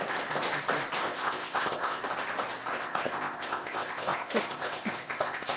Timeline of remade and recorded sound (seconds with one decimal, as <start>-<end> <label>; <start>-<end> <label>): 0.0-1.0 recorded; 1.0-2.0 remade; 2.0-2.7 recorded; 2.7-5.6 remade